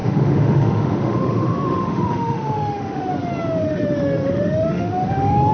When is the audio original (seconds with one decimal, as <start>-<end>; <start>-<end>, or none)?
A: 3.1-3.6